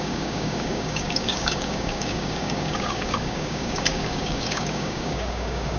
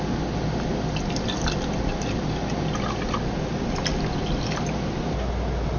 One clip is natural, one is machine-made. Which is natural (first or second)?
second